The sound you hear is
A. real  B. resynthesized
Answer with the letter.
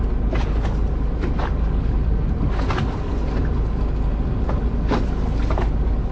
A